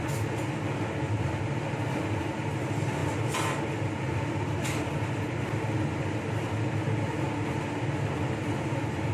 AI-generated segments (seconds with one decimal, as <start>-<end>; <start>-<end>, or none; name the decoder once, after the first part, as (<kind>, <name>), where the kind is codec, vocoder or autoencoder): none